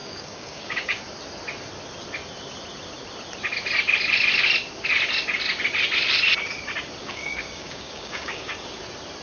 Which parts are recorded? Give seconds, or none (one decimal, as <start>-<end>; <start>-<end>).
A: 1.0-7.0; 8.5-9.2